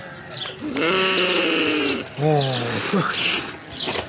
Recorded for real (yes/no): yes